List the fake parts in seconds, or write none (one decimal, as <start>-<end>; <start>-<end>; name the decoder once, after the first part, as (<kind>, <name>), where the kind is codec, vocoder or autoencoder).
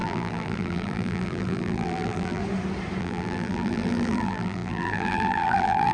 0.0-2.4 (vocoder, BigVGAN v2); 3.0-5.9